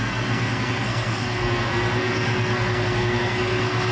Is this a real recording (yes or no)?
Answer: no